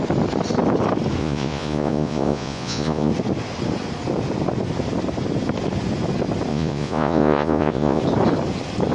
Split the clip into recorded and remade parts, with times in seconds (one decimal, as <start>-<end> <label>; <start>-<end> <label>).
0.0-1.2 recorded; 1.2-3.1 remade; 3.1-6.5 recorded; 6.5-8.0 remade; 8.0-8.9 recorded